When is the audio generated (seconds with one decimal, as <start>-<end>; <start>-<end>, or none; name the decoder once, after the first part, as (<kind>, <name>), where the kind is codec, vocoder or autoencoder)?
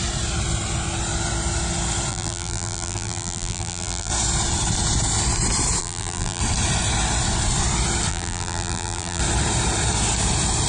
2.1-4.1 (vocoder, BigVGAN v2); 5.8-6.4; 8.1-9.2